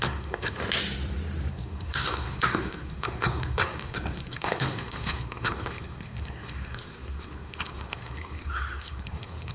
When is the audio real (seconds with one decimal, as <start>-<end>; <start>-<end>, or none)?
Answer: 0.6-1.5